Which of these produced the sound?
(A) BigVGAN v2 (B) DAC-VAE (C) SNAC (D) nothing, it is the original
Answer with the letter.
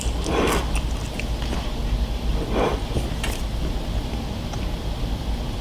D